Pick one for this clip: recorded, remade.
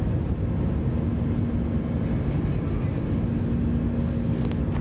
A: recorded